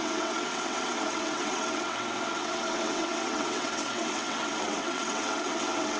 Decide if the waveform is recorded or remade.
remade